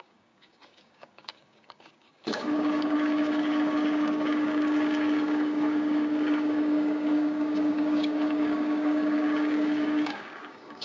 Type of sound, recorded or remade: remade